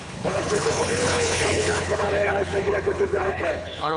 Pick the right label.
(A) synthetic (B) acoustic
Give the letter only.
A